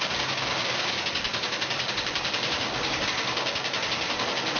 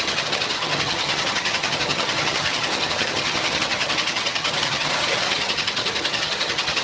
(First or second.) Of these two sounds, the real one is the first